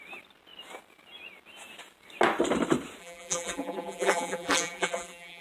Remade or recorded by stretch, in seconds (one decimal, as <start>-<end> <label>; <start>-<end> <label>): 0.0-3.0 recorded; 3.0-5.4 remade